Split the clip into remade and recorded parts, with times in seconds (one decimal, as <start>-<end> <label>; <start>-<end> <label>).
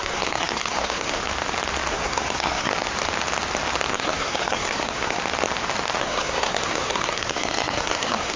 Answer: 0.0-1.2 remade; 1.2-1.9 recorded; 1.9-2.7 remade; 2.7-3.9 recorded; 3.9-5.2 remade; 5.2-6.0 recorded; 6.0-8.4 remade